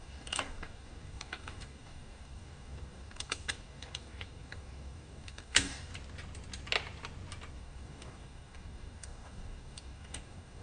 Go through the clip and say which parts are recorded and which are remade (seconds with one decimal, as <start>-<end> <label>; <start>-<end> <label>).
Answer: 0.0-5.9 remade; 5.9-7.5 recorded; 7.5-10.6 remade